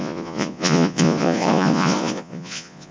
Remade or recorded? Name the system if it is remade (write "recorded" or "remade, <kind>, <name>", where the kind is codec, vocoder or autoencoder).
remade, vocoder, Vocos